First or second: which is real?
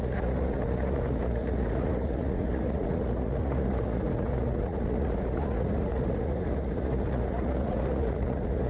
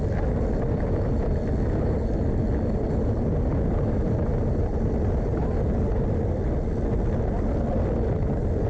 second